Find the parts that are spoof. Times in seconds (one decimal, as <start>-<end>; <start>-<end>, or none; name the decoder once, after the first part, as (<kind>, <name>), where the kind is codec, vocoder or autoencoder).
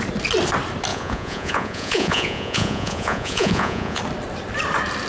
0.9-4.0 (vocoder, Vocos)